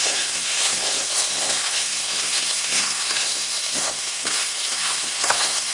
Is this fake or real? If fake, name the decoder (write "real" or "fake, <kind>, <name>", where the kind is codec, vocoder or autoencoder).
fake, codec, SNAC